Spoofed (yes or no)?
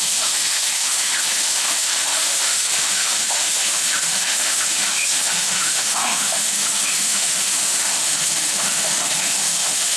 yes